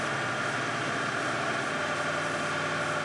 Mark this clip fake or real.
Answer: real